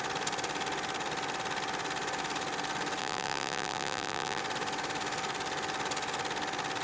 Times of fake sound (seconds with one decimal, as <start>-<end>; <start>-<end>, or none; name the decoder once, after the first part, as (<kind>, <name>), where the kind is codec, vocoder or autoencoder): 3.0-4.4 (vocoder, BigVGAN v2)